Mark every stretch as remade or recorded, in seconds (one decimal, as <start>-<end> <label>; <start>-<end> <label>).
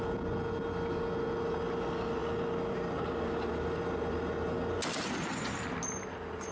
0.0-6.5 recorded